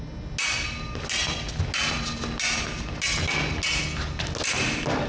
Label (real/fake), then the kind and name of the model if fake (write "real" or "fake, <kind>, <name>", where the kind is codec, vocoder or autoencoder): real